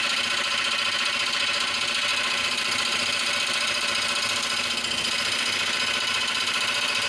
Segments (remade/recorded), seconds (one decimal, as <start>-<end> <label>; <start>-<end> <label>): 0.0-7.1 remade